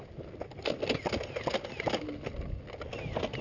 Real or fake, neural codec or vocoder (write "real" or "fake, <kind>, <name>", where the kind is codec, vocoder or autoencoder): real